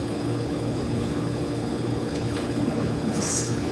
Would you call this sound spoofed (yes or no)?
yes